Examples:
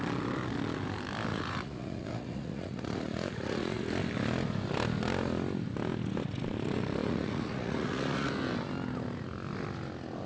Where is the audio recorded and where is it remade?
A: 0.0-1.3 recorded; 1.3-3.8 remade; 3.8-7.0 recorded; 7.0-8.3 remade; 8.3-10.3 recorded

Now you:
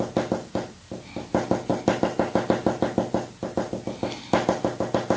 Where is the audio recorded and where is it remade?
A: 0.0-5.2 recorded

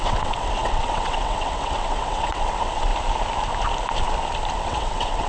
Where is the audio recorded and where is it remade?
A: 0.0-2.9 remade; 2.9-4.5 recorded; 4.5-5.3 remade

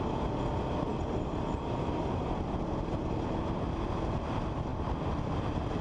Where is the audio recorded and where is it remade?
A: 0.0-5.8 recorded

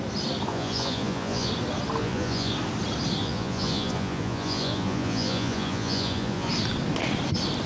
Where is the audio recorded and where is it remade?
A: 0.0-0.5 recorded; 0.5-1.5 remade; 1.5-2.0 recorded; 2.0-2.5 remade; 2.5-3.2 recorded; 3.2-6.5 remade; 6.5-7.7 recorded

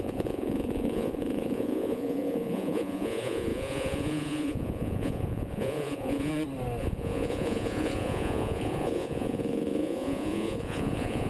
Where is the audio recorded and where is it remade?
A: 0.0-6.3 remade; 6.3-6.8 recorded; 6.8-11.3 remade